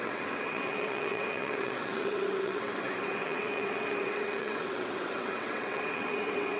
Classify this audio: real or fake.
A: fake